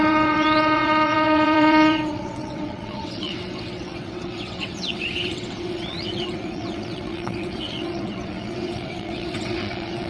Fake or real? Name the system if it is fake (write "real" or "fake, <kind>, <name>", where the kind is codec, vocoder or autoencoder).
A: fake, vocoder, WaveNeXt